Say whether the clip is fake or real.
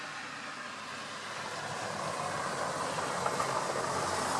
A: real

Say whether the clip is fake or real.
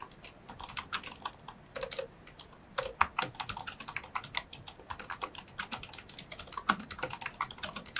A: real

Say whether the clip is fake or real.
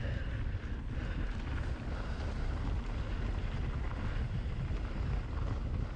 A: real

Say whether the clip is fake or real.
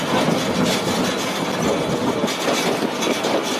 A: real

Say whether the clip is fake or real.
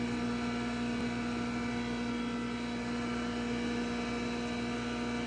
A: real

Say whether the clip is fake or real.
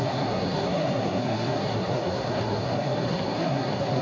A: fake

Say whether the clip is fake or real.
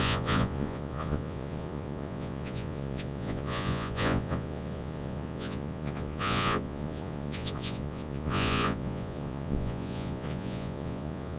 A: fake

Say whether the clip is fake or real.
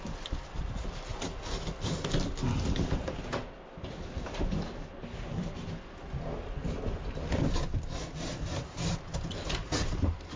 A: real